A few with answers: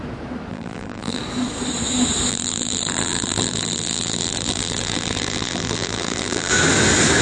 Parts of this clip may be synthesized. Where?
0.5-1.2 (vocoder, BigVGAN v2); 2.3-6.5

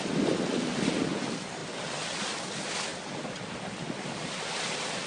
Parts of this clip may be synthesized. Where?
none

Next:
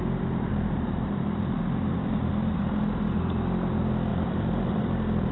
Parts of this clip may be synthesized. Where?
0.5-2.3 (vocoder, BigVGAN v2); 4.1-4.8